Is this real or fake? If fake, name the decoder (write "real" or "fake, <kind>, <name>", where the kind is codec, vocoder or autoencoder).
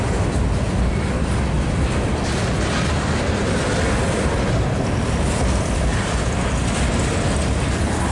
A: real